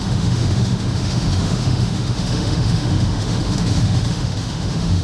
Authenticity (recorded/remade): remade